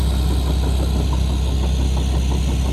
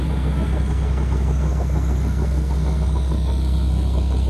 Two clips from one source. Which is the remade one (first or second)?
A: second